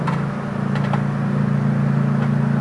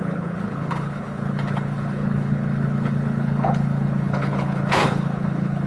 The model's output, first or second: second